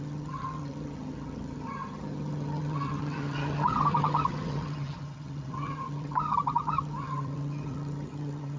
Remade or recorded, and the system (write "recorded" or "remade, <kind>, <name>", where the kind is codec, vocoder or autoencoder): remade, vocoder, HiFi-GAN